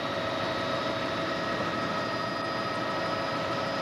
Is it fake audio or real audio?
real